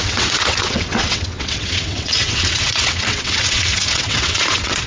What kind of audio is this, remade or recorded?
remade